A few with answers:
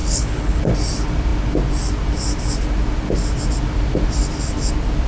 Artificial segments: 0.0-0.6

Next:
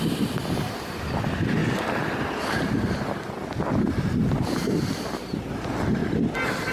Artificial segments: none

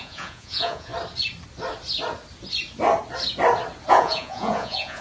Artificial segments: 0.0-0.9; 3.9-5.0

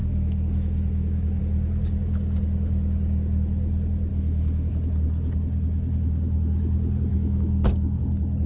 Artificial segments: 0.0-1.4; 4.1-4.7; 7.1-8.0